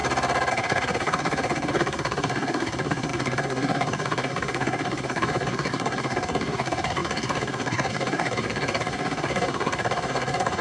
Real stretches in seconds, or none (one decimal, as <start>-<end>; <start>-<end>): 0.0-0.5